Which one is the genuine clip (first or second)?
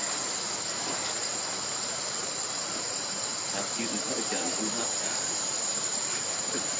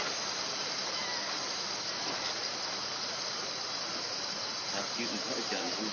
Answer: second